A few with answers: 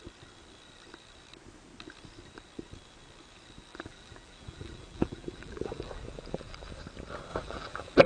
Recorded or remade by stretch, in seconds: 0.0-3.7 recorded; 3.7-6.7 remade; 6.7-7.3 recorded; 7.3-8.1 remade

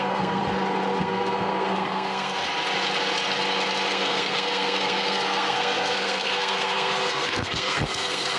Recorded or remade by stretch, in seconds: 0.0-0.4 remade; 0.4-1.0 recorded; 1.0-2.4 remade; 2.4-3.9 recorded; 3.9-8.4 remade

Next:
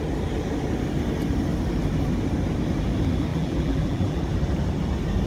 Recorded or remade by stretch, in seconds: 0.0-3.3 recorded; 3.3-4.2 remade; 4.2-5.3 recorded

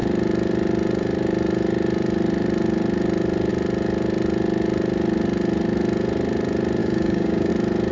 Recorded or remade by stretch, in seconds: 0.0-6.8 recorded; 6.8-7.5 remade; 7.5-7.9 recorded

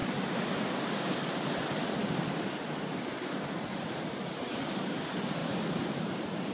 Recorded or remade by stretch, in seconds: 0.0-0.5 remade; 0.5-5.4 recorded; 5.4-6.5 remade

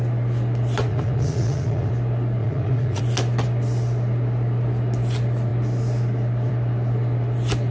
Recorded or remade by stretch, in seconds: 0.0-0.9 recorded; 0.9-1.9 remade; 1.9-2.4 recorded; 2.4-3.0 remade; 3.0-7.7 recorded